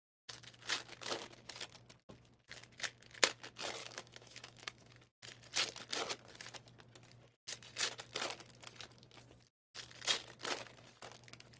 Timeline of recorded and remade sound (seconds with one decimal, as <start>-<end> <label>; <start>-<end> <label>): 0.0-3.8 recorded; 3.8-4.9 remade; 4.9-11.6 recorded